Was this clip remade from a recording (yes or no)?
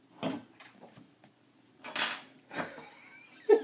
yes